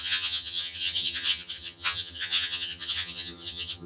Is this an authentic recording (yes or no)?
no